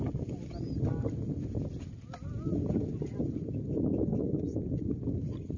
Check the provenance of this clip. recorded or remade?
recorded